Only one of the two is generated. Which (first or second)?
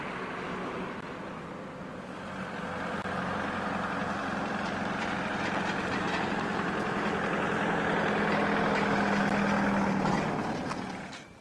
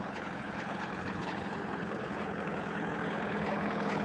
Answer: second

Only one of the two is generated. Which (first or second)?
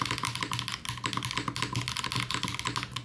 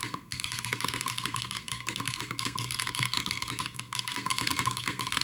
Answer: second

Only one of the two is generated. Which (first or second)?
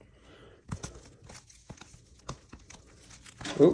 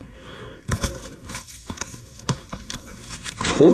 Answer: second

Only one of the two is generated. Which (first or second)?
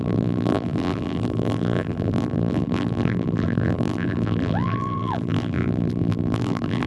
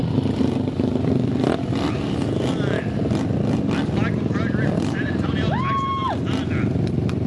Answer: first